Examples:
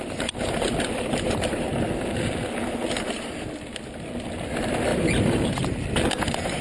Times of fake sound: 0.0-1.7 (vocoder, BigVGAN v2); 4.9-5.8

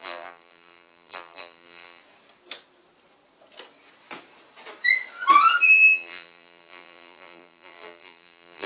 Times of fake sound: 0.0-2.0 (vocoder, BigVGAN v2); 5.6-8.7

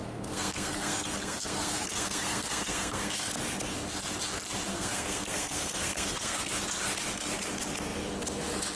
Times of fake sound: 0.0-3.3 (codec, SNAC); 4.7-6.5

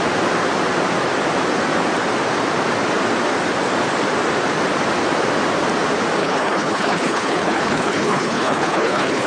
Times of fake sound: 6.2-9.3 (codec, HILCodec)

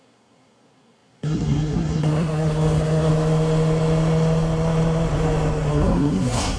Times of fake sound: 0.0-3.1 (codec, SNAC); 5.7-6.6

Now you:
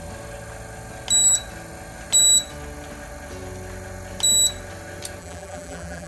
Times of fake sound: 5.2-6.1 (vocoder, BigVGAN v2)

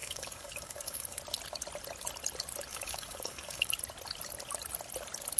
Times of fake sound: 0.0-1.2 (codec, DAC); 2.7-3.7